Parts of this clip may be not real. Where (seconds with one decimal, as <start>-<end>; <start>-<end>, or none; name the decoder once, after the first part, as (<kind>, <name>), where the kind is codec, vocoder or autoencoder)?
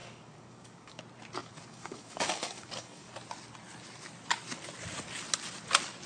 0.0-1.0 (codec, DAC); 1.4-3.1